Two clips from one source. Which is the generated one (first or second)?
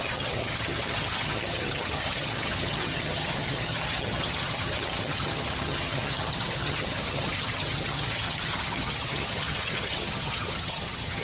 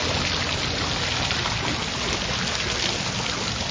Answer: first